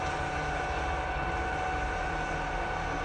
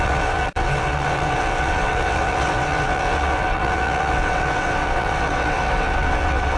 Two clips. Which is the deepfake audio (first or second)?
second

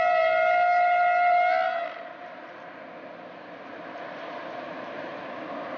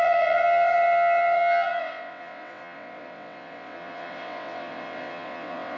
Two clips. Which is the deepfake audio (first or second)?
second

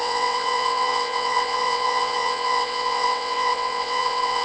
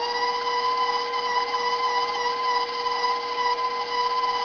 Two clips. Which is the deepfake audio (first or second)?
first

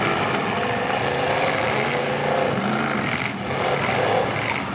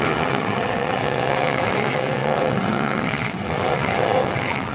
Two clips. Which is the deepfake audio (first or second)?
second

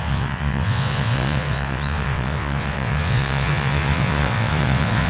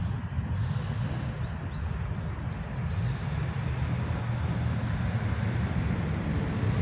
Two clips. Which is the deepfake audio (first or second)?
first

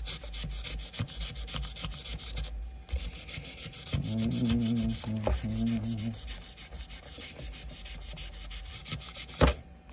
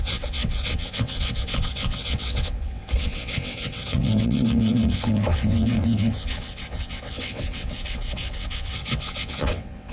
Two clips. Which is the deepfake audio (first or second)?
second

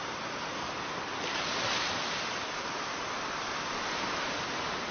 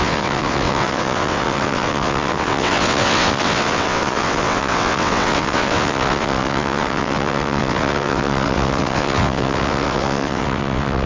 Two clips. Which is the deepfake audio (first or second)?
second